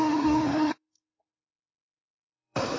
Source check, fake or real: fake